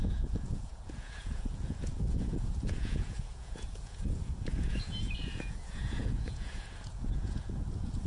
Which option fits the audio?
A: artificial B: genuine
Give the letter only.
A